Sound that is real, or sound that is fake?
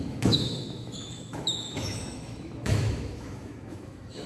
fake